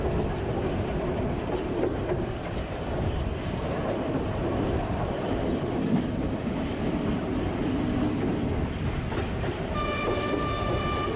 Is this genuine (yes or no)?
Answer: yes